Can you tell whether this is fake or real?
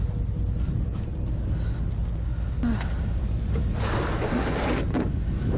real